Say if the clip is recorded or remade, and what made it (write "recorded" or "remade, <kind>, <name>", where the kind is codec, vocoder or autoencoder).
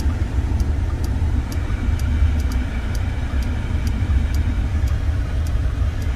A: recorded